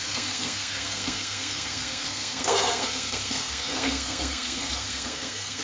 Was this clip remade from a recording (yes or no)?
yes